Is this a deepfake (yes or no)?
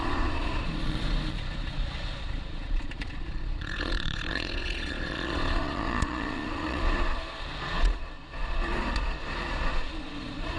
yes